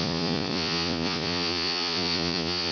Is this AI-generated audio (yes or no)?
yes